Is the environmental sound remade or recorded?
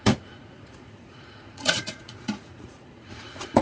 remade